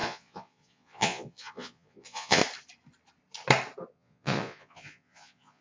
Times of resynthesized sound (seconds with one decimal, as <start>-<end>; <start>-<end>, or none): 0.0-2.4; 3.9-5.6